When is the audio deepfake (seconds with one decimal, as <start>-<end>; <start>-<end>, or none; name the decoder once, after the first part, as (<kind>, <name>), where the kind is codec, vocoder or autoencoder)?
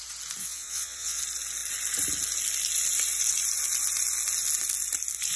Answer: 0.4-1.2 (vocoder, WaveNeXt)